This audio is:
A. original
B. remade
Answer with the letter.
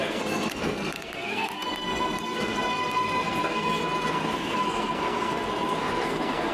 B